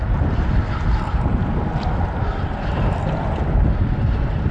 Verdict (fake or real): real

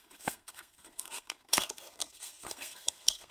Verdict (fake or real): fake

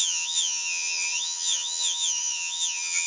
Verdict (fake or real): fake